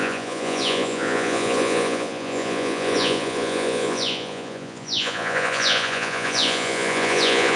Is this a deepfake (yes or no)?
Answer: yes